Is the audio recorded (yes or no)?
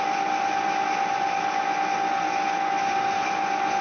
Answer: yes